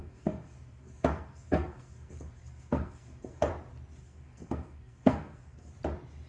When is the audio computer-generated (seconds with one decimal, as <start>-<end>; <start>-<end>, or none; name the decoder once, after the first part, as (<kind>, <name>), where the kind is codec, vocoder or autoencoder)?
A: 0.0-3.5 (codec, SNAC); 4.0-5.7